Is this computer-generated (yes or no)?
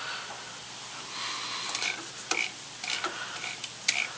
yes